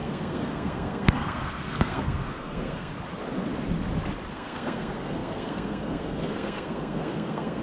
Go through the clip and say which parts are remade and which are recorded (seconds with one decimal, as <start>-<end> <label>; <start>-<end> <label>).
0.0-2.9 remade; 2.9-4.3 recorded; 4.3-7.6 remade